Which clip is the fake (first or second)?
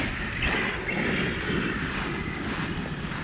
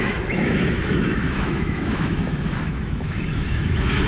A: second